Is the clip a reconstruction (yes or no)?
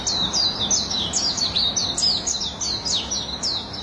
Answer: no